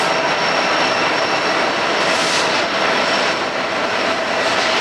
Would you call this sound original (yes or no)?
yes